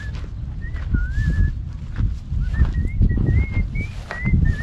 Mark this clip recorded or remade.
recorded